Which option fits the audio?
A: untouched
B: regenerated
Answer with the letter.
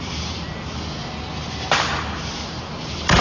A